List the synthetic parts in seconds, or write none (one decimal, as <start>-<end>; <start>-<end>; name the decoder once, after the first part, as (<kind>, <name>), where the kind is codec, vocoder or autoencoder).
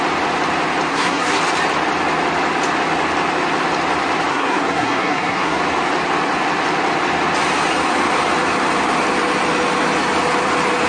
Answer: 0.9-1.4 (codec, SNAC); 4.3-5.6